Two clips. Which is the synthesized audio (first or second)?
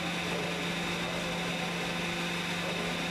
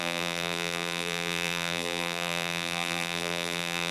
second